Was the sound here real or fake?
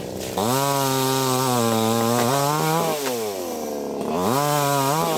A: real